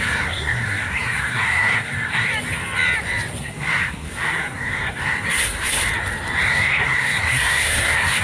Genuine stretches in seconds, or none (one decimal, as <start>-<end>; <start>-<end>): 2.3-3.4; 5.8-6.4